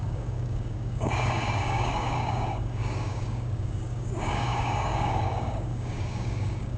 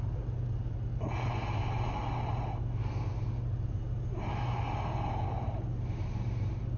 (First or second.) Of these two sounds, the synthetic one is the first